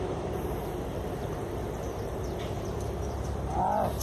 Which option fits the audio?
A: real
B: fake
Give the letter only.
B